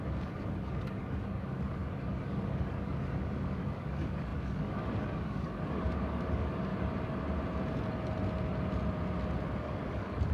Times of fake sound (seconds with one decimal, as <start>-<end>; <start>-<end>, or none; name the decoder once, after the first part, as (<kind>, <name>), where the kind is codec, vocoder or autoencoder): 0.0-6.7 (codec, DAC); 9.6-10.3